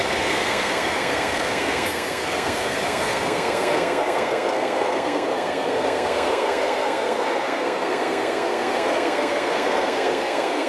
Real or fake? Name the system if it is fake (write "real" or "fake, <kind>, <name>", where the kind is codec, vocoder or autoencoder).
fake, codec, SNAC